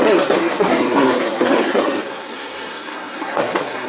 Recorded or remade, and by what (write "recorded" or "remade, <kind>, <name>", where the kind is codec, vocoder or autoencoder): remade, codec, SNAC